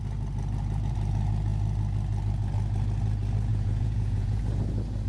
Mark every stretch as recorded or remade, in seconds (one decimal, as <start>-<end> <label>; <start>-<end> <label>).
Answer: 0.0-3.5 recorded; 3.5-4.4 remade; 4.4-5.1 recorded

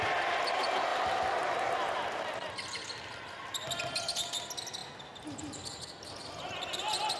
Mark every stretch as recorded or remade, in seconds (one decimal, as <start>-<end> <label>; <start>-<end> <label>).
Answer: 0.0-7.2 recorded

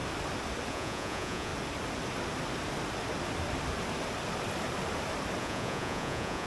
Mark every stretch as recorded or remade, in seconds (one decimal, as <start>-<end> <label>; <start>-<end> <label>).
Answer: 0.0-0.7 recorded; 0.7-1.5 remade; 1.5-5.4 recorded; 5.4-6.5 remade

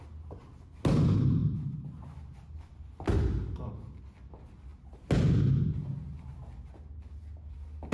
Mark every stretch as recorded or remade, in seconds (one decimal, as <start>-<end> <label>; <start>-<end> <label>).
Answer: 0.0-1.4 recorded; 1.4-4.0 remade; 4.0-7.9 recorded

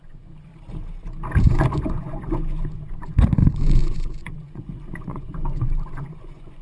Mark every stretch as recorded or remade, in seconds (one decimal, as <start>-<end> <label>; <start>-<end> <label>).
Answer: 0.0-0.5 remade; 0.5-1.4 recorded; 1.4-6.6 remade

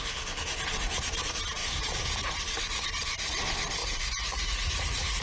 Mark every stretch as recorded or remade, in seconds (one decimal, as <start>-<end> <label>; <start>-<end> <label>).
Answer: 0.0-3.8 recorded; 3.8-5.2 remade